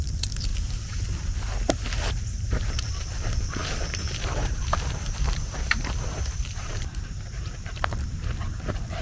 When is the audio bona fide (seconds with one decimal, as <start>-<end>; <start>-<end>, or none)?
0.5-2.1